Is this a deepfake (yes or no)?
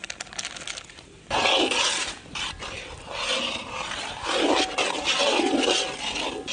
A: no